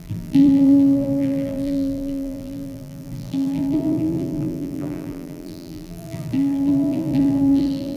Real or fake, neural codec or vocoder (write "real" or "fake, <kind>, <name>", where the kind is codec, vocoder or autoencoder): fake, vocoder, BigVGAN v2